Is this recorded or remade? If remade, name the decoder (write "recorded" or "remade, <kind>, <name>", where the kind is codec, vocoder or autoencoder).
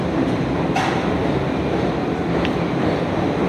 recorded